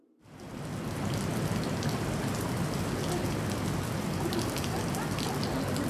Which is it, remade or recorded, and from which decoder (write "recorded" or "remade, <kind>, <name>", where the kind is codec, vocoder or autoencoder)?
recorded